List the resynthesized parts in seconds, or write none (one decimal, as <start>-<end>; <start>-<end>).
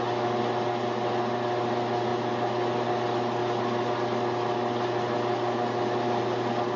none